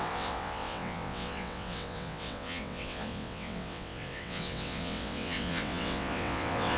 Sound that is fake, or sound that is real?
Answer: fake